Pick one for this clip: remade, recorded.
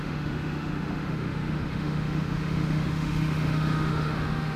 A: remade